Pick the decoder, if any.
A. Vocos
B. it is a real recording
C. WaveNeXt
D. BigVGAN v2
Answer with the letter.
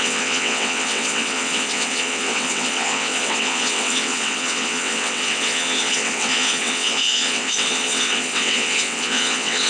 C